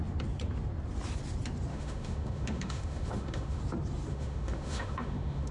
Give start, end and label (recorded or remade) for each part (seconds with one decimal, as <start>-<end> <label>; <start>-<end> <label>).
0.0-1.7 recorded; 1.7-3.6 remade; 3.6-4.1 recorded; 4.1-5.5 remade